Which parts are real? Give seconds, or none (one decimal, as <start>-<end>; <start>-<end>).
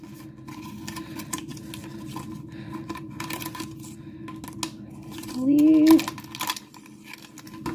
0.0-7.7